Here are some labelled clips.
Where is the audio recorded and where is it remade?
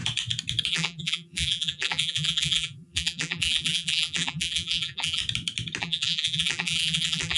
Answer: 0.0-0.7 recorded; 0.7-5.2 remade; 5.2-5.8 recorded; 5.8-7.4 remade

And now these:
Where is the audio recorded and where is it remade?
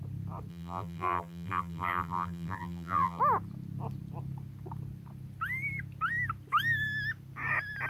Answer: 0.0-0.5 recorded; 0.5-3.2 remade; 3.2-7.9 recorded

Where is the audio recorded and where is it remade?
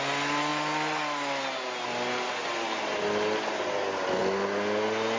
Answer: 0.0-5.2 recorded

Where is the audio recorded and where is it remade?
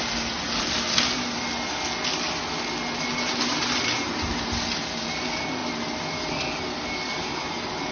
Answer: 0.0-3.1 recorded; 3.1-5.6 remade; 5.6-7.9 recorded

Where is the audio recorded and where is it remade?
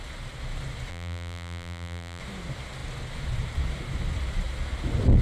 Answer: 0.0-0.9 recorded; 0.9-2.2 remade; 2.2-5.2 recorded